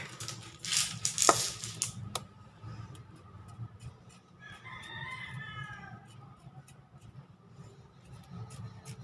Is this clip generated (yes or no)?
no